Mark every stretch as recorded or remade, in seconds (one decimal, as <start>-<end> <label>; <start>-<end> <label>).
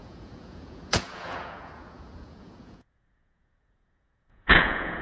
0.0-5.0 remade